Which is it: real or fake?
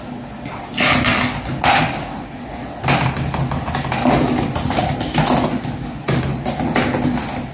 real